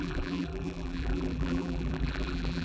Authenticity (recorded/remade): remade